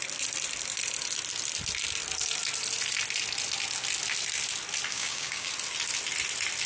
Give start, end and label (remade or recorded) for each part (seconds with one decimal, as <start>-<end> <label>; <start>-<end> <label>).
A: 0.0-4.9 recorded; 4.9-5.5 remade; 5.5-6.7 recorded